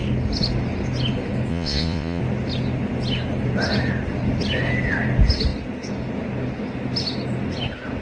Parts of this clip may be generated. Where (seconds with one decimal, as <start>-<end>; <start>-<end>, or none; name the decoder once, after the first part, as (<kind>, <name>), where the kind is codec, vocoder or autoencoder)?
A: 1.5-2.2 (vocoder, Vocos)